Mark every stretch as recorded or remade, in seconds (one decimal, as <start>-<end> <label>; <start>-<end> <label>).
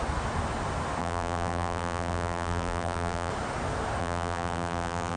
0.0-1.0 recorded; 1.0-3.3 remade; 3.3-4.0 recorded; 4.0-5.2 remade